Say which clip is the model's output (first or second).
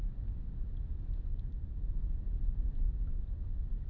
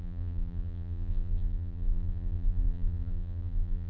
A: second